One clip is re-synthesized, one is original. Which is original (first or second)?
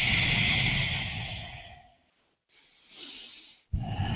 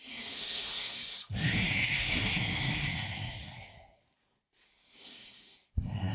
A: first